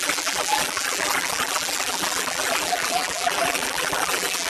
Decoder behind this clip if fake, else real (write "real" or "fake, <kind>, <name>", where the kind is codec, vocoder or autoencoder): fake, vocoder, BigVGAN v2